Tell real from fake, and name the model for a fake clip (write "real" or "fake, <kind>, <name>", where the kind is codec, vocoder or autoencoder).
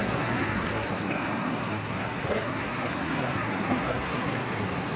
fake, codec, SNAC